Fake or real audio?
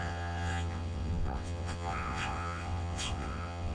fake